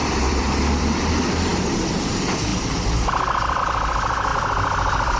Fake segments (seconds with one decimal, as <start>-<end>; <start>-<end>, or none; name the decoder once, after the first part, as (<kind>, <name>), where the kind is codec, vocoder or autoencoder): 0.0-1.5 (vocoder, BigVGAN v2); 2.1-4.3